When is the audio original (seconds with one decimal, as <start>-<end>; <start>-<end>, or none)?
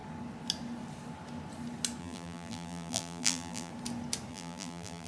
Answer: 0.0-2.0; 3.7-4.3